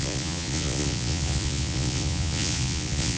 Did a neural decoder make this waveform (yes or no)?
yes